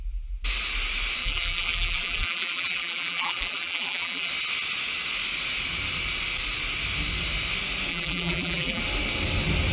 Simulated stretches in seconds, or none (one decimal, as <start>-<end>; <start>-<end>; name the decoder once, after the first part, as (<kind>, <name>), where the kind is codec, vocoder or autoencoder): 1.2-4.3 (vocoder, BigVGAN v2); 7.9-8.8